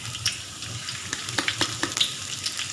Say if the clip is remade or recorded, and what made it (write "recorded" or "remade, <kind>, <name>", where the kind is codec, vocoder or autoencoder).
recorded